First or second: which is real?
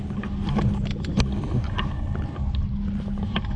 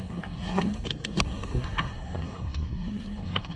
first